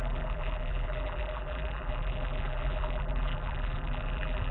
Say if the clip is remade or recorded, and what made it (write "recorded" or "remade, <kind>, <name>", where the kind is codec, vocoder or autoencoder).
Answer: remade, vocoder, BigVGAN v2